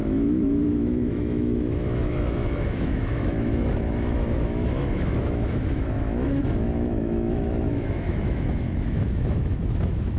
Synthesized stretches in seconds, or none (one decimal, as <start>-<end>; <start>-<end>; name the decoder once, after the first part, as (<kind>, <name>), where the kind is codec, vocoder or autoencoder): 0.0-10.2 (autoencoder, DAC-VAE)